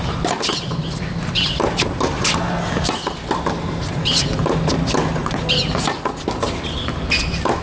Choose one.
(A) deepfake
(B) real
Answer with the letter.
B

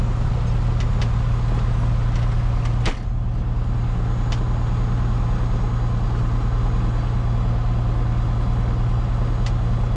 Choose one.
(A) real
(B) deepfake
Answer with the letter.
A